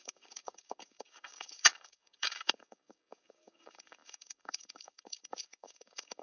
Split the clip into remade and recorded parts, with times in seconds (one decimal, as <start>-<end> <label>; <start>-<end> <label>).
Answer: 0.0-6.2 remade